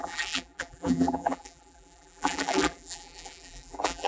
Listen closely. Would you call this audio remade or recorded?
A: remade